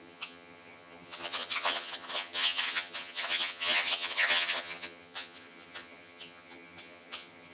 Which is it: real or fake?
fake